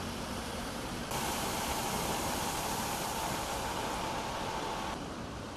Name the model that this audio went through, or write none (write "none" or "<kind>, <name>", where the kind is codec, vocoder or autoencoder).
vocoder, BigVGAN v2